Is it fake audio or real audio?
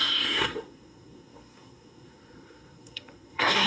fake